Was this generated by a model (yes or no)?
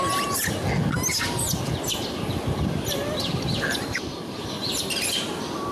no